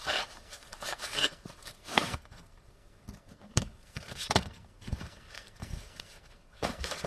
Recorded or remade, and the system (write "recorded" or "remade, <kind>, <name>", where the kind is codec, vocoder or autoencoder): remade, codec, SNAC